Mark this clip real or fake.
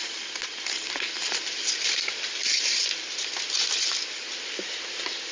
real